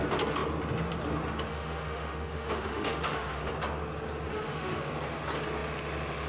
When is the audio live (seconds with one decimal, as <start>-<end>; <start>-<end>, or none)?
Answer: 0.0-1.5; 3.5-4.3; 4.9-6.3